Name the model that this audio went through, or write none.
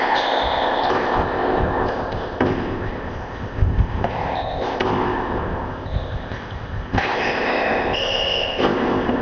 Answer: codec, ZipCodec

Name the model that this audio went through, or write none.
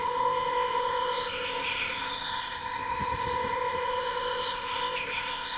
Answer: codec, ZipCodec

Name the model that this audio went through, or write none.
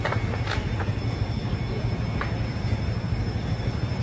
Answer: none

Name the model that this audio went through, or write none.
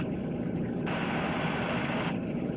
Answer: none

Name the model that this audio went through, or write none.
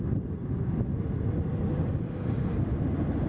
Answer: none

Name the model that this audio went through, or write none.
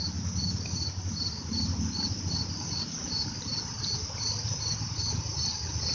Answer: none